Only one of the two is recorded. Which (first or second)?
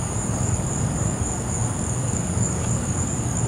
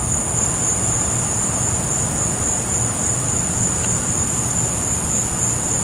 second